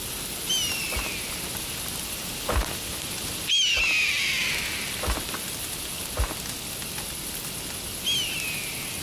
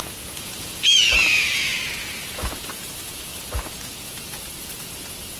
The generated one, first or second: second